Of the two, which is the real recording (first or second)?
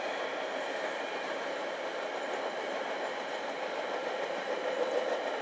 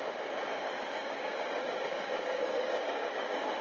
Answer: first